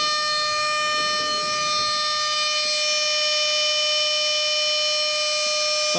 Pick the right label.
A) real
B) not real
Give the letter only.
A